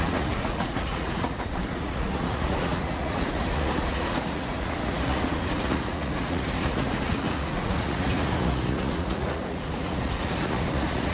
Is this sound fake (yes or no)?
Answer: yes